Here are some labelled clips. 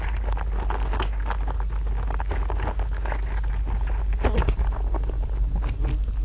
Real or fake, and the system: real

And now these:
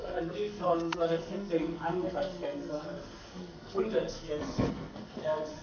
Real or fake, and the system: fake, codec, SNAC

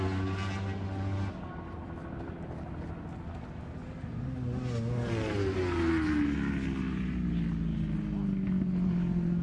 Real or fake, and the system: real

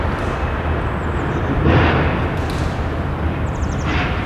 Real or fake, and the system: real